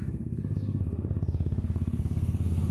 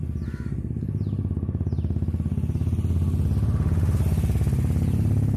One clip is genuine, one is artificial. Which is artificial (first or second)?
first